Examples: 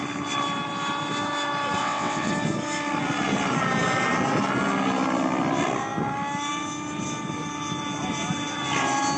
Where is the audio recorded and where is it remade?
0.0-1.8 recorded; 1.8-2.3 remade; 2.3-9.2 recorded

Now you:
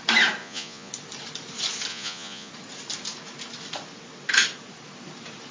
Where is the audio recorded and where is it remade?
0.0-0.4 recorded; 0.4-0.9 remade; 0.9-1.9 recorded; 1.9-2.5 remade; 2.5-5.5 recorded

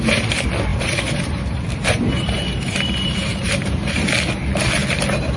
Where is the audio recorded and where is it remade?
0.0-0.7 recorded; 0.7-3.9 remade; 3.9-5.4 recorded

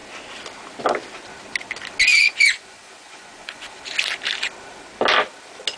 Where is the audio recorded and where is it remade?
0.0-2.1 recorded; 2.1-3.8 remade; 3.8-5.8 recorded

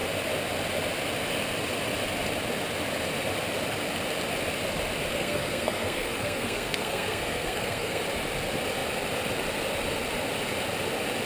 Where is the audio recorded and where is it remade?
0.0-5.1 recorded; 5.1-8.0 remade; 8.0-11.3 recorded

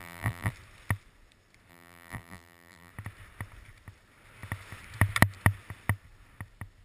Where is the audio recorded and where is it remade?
0.0-0.5 remade; 0.5-1.7 recorded; 1.7-2.9 remade; 2.9-6.8 recorded

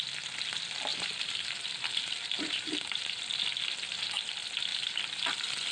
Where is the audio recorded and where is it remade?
0.0-0.9 recorded; 0.9-3.2 remade; 3.2-4.7 recorded; 4.7-5.2 remade; 5.2-5.7 recorded